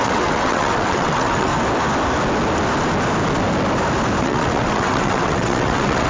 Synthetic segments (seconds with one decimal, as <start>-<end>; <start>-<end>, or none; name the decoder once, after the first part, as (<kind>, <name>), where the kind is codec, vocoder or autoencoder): 0.0-1.5 (vocoder, WaveNeXt); 4.2-6.1